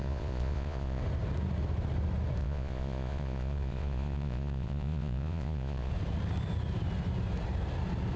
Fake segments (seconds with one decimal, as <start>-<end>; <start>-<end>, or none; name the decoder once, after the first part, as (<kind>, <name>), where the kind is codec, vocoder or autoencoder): 0.0-1.0 (vocoder, Vocos); 2.4-5.9